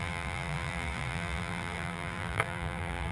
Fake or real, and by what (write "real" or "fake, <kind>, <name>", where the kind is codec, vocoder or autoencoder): fake, vocoder, BigVGAN v2